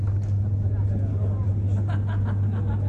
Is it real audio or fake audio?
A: real